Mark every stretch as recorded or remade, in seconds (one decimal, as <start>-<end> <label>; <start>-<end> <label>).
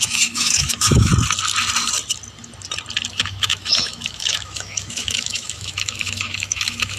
0.0-1.1 remade; 1.1-3.1 recorded; 3.1-7.0 remade